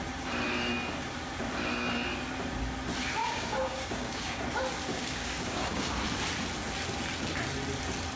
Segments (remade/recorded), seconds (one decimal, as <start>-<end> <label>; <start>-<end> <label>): 0.0-3.2 recorded; 3.2-4.4 remade; 4.4-4.9 recorded; 4.9-6.0 remade; 6.0-8.2 recorded